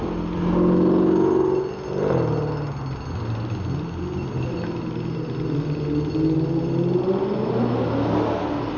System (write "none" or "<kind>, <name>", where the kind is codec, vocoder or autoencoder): none